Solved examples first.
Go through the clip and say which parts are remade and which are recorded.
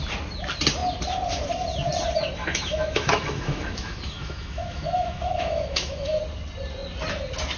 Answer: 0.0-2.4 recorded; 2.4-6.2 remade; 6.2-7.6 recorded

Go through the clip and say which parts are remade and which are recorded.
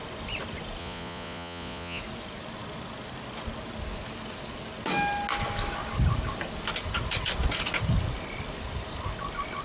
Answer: 0.0-0.8 recorded; 0.8-2.0 remade; 2.0-9.6 recorded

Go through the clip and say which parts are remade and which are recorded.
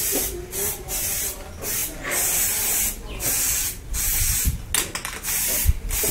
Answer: 0.0-0.6 recorded; 0.6-1.2 remade; 1.2-6.1 recorded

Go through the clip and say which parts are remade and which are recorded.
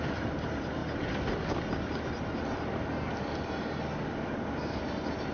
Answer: 0.0-5.3 recorded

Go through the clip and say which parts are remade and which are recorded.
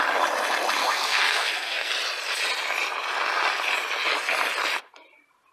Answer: 0.0-0.8 recorded; 0.8-1.9 remade; 1.9-5.5 recorded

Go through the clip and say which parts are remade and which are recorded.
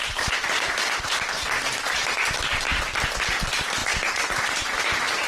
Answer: 0.0-2.6 remade; 2.6-3.8 recorded; 3.8-5.3 remade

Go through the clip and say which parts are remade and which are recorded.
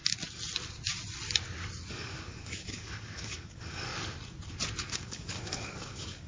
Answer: 0.0-1.9 recorded; 1.9-3.9 remade; 3.9-4.8 recorded; 4.8-6.3 remade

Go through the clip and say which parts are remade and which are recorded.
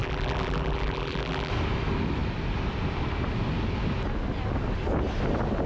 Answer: 0.0-1.5 remade; 1.5-5.7 recorded